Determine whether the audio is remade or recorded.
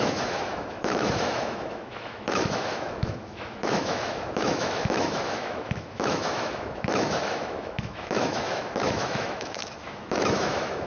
remade